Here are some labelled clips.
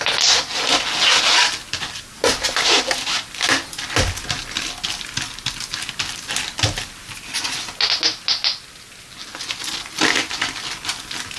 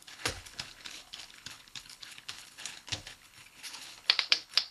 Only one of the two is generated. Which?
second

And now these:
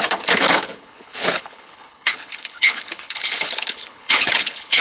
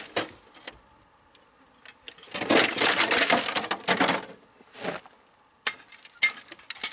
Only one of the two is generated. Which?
first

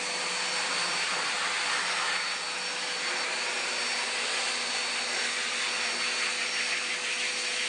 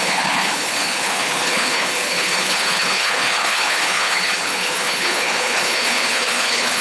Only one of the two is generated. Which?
second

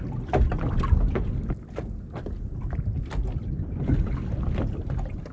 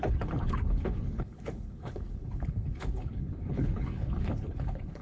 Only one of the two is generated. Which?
second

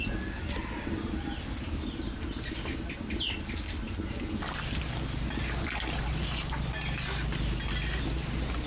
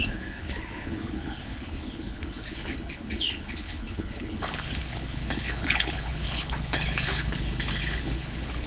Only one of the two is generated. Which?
second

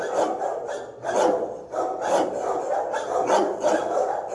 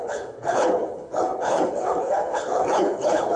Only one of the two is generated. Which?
second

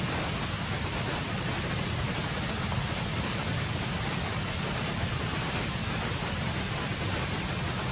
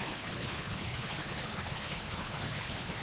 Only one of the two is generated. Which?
second